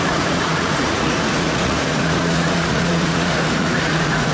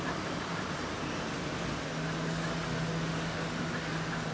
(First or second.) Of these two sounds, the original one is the second